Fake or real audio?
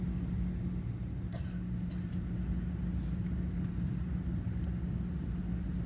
real